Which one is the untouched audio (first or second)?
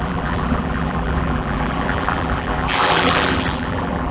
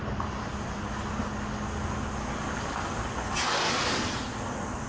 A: second